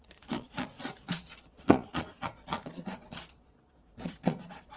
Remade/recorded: remade